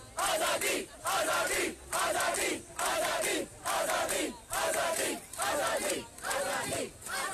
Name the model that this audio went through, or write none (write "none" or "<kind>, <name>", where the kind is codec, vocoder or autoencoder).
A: none